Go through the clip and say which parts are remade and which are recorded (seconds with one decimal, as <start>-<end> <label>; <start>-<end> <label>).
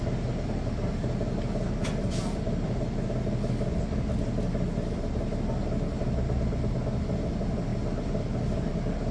0.0-9.1 recorded